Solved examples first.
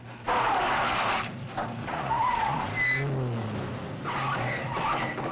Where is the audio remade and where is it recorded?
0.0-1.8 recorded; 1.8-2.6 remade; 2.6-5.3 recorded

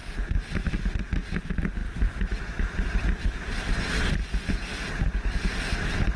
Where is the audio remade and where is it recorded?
0.0-1.8 recorded; 1.8-3.2 remade; 3.2-3.7 recorded; 3.7-5.3 remade; 5.3-6.2 recorded

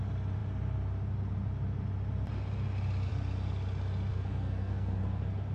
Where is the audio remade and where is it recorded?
0.0-4.1 recorded; 4.1-5.0 remade; 5.0-5.5 recorded

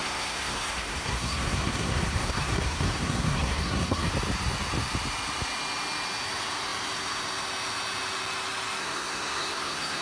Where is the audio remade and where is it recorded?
0.0-4.1 remade; 4.1-8.8 recorded; 8.8-10.0 remade

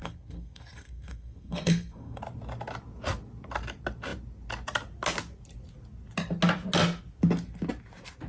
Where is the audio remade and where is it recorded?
0.0-2.2 remade; 2.2-8.3 recorded